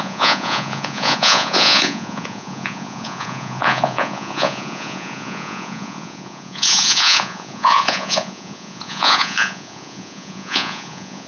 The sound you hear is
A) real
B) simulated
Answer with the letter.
B